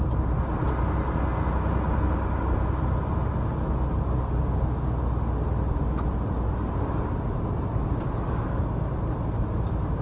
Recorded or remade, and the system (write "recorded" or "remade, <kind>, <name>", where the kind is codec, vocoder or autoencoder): recorded